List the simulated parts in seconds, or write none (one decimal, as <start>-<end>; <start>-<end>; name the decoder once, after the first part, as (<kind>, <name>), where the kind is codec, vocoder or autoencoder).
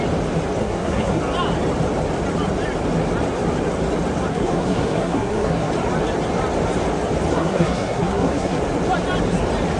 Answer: 0.6-1.2 (codec, SNAC); 4.3-5.7; 7.3-8.6